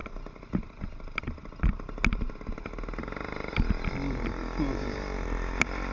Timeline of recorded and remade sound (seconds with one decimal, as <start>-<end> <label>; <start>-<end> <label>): 0.0-5.9 recorded